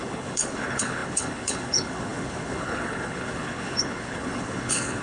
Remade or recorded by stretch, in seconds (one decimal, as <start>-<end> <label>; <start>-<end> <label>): 0.0-5.0 remade